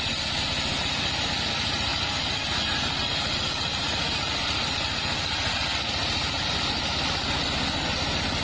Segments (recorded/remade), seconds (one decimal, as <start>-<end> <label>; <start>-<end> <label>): 0.0-8.4 recorded